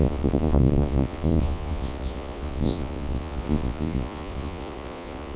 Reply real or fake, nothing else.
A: fake